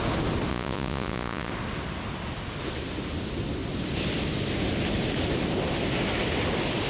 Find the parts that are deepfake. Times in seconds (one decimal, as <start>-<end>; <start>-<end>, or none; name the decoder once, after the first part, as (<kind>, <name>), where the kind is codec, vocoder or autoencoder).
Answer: 0.5-1.5 (vocoder, Vocos)